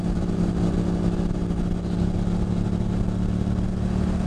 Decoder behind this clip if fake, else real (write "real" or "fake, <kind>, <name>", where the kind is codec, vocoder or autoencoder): real